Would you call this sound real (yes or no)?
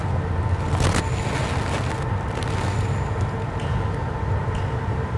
yes